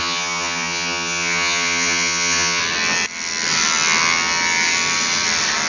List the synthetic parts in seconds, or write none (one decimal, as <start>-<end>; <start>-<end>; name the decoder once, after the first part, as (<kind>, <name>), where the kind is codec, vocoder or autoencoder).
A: 0.0-2.6 (vocoder, HiFi-GAN)